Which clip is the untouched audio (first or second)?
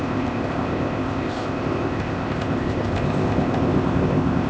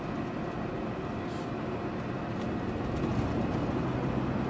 second